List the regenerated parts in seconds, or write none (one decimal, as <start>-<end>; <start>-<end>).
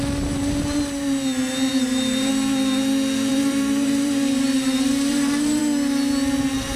1.7-2.3; 3.3-5.6